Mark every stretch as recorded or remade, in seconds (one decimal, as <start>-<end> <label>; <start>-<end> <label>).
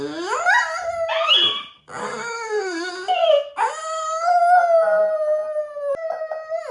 0.0-2.0 recorded; 2.0-2.9 remade; 2.9-6.7 recorded